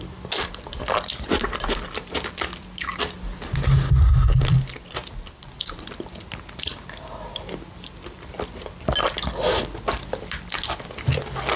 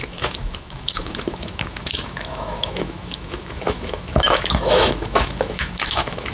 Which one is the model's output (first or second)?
second